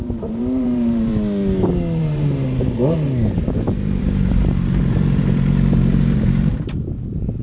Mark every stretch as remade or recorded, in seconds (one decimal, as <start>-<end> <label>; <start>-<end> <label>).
0.0-1.1 remade; 1.1-2.0 recorded; 2.0-2.8 remade; 2.8-4.0 recorded; 4.0-7.4 remade